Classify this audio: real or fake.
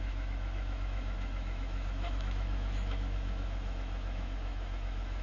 fake